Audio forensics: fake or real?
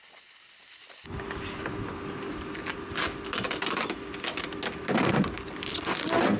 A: real